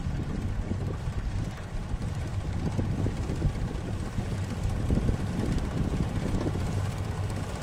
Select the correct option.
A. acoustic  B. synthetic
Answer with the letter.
B